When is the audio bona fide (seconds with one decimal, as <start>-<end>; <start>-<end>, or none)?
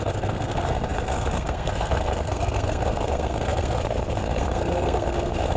none